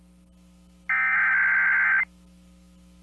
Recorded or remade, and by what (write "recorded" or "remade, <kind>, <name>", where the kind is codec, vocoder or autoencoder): recorded